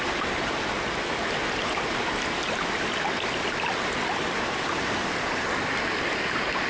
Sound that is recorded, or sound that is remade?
recorded